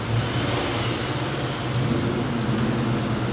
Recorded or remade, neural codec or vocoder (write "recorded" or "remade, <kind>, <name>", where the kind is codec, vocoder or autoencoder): recorded